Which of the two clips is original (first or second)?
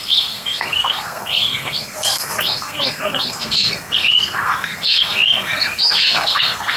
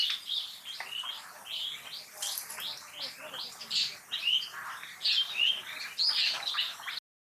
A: second